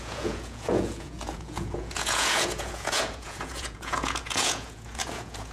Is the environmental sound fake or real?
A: fake